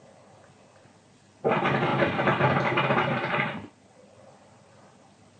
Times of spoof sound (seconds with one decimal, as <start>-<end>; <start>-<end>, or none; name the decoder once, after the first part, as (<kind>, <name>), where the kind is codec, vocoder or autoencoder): none